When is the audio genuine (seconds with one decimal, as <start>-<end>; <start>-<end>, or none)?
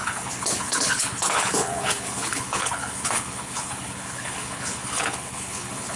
none